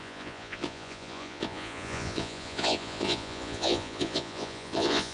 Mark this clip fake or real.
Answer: fake